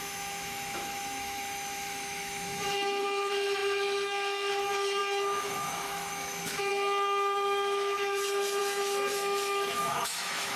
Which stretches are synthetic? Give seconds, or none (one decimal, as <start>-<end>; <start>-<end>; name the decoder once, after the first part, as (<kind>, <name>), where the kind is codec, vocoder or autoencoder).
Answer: 0.0-10.6 (autoencoder, DAC-VAE)